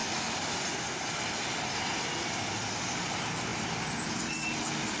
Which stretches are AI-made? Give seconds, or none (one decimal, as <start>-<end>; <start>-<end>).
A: 3.5-4.3